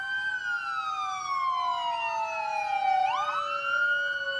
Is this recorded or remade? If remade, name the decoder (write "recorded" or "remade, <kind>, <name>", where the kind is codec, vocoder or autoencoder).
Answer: recorded